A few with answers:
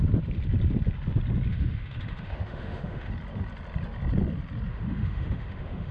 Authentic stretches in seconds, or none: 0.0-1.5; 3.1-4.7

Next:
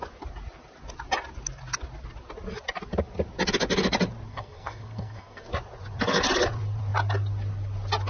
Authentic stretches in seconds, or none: 0.0-4.3; 5.5-8.1

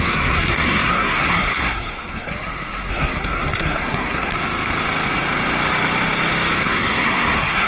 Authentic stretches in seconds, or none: 2.3-2.9; 4.3-6.6

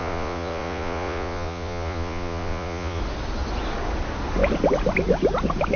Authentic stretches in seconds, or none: 3.0-5.8

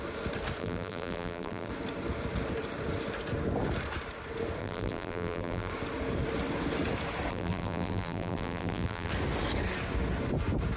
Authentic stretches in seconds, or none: 0.0-0.6; 1.7-4.6; 5.7-7.3; 9.1-10.8

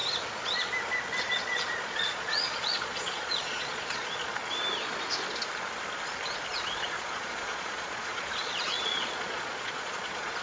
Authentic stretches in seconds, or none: 0.0-1.3; 4.4-6.5